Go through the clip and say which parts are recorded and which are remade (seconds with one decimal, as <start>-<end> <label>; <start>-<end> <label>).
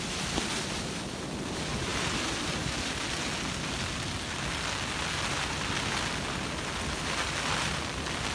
0.0-8.3 recorded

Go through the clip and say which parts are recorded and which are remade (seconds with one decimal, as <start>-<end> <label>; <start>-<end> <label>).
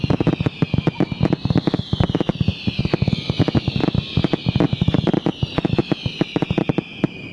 0.0-7.3 recorded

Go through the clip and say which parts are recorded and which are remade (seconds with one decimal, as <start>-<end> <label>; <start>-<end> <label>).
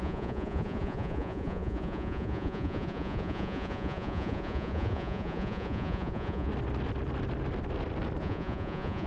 0.0-6.5 remade; 6.5-8.2 recorded; 8.2-9.1 remade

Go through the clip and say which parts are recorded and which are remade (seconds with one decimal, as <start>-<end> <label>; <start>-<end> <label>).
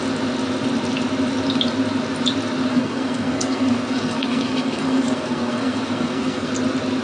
0.0-2.7 recorded; 2.7-6.5 remade; 6.5-7.0 recorded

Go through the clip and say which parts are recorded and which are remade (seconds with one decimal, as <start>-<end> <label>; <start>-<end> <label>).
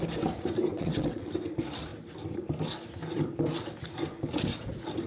0.0-0.7 recorded; 0.7-1.3 remade; 1.3-5.1 recorded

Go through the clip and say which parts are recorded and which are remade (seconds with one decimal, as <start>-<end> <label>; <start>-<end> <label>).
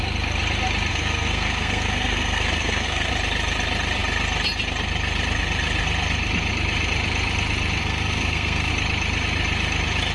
0.0-0.9 recorded; 0.9-3.1 remade; 3.1-7.8 recorded; 7.8-8.7 remade; 8.7-10.1 recorded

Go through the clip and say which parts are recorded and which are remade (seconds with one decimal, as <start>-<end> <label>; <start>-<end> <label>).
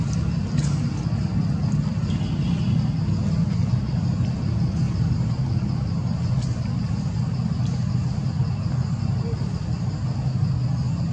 0.0-11.1 recorded